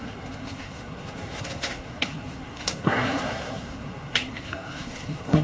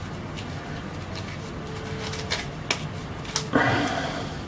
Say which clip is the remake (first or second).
first